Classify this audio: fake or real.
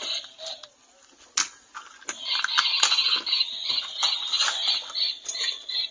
real